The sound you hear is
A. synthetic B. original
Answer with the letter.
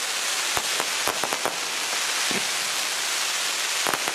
B